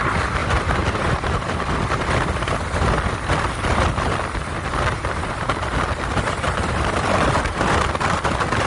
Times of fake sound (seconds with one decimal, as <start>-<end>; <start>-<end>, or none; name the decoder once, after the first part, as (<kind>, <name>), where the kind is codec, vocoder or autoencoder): 0.4-1.7 (vocoder, BigVGAN v2)